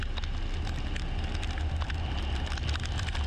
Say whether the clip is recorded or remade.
recorded